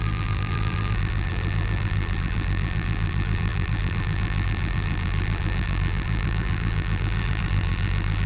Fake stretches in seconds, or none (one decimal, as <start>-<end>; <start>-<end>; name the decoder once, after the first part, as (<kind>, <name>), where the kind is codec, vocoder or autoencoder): 0.0-8.3 (vocoder, BigVGAN v2)